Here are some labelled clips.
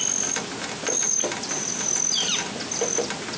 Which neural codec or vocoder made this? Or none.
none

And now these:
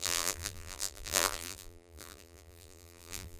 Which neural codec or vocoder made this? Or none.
vocoder, BigVGAN v2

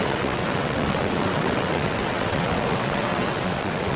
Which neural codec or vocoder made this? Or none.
vocoder, WaveNeXt